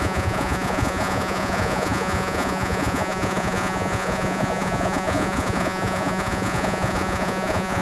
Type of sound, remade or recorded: remade